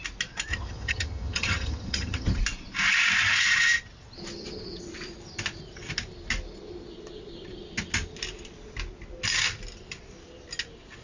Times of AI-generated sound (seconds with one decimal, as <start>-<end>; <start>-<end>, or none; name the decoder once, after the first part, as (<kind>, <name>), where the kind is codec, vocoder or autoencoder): 0.5-2.4 (vocoder, HiFi-GAN)